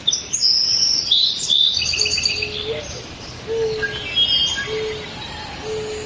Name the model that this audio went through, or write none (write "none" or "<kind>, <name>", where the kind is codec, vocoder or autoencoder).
none